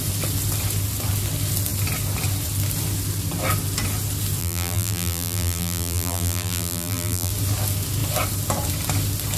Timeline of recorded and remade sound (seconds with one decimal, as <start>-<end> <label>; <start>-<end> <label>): 0.0-4.4 recorded; 4.4-7.3 remade; 7.3-9.4 recorded